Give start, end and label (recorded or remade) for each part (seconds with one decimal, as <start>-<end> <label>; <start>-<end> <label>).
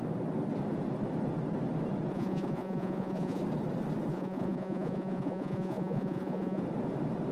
0.0-2.1 recorded; 2.1-3.4 remade; 3.4-4.1 recorded; 4.1-6.6 remade; 6.6-7.3 recorded